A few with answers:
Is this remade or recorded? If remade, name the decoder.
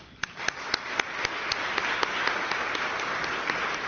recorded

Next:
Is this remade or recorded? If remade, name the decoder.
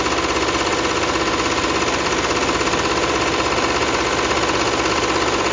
recorded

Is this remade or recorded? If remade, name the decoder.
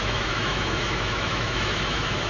remade, autoencoder, DAC-VAE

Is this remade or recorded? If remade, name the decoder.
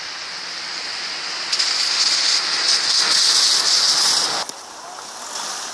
recorded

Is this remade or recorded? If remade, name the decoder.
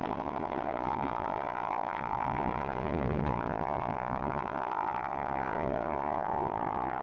remade, vocoder, Vocos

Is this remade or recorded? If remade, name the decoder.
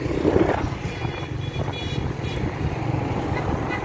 recorded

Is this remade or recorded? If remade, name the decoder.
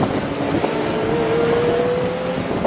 recorded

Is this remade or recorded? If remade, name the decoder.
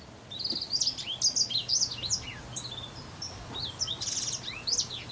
recorded